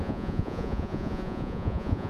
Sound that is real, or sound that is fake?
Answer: fake